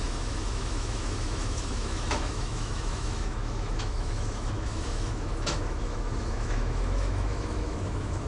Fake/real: fake